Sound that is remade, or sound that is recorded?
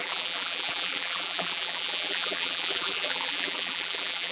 remade